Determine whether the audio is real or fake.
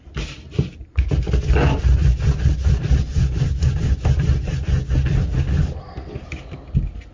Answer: real